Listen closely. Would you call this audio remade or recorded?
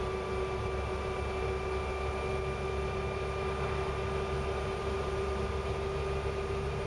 recorded